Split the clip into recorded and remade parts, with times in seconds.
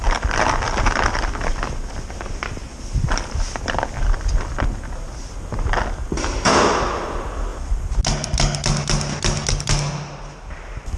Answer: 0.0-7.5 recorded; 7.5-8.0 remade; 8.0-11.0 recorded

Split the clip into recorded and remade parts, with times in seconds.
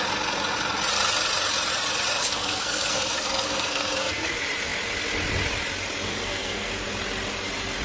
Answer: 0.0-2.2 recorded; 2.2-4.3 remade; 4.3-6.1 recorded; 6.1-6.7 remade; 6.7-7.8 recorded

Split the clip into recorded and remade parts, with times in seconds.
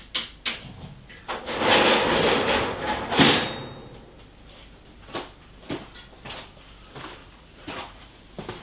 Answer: 0.0-7.2 recorded; 7.2-8.2 remade; 8.2-8.6 recorded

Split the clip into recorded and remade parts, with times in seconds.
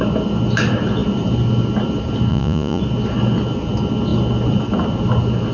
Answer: 0.0-2.3 recorded; 2.3-2.8 remade; 2.8-5.5 recorded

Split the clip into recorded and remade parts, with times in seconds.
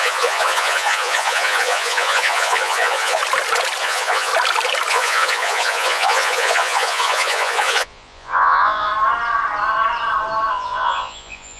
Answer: 0.0-3.2 remade; 3.2-3.8 recorded; 3.8-4.3 remade; 4.3-4.9 recorded; 4.9-8.9 remade; 8.9-10.5 recorded; 10.5-11.6 remade